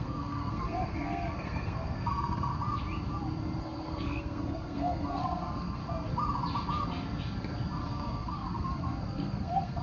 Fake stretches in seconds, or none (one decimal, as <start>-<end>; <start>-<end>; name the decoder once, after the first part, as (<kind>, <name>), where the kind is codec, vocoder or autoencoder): 0.0-2.5 (codec, SNAC); 3.6-5.8; 7.8-9.8